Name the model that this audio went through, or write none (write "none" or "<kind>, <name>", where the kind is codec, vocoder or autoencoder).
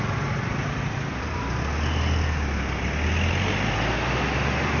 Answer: none